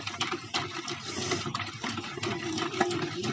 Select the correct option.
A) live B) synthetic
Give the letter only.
A